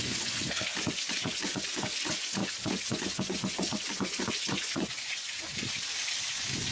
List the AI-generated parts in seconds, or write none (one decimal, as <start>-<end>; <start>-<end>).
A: 0.0-5.5; 6.3-6.7